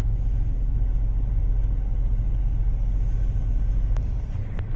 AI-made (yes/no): yes